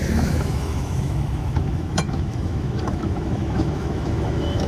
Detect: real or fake fake